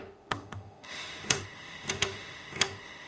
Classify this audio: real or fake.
fake